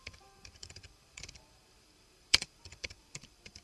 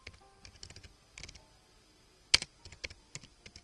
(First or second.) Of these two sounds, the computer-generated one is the first